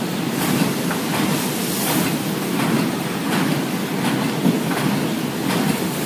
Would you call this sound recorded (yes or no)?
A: yes